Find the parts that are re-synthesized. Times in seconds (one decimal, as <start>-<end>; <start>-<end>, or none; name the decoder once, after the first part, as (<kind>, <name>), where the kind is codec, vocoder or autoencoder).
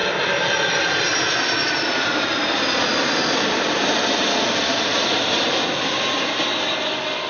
none